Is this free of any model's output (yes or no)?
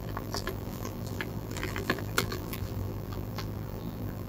no